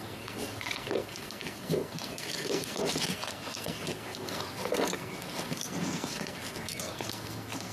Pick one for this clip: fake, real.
fake